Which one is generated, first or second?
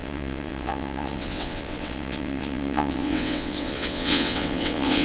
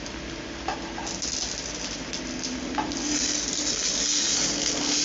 first